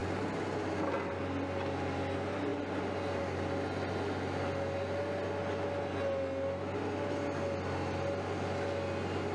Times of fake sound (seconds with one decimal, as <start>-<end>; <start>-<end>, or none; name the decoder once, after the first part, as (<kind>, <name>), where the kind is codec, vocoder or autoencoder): none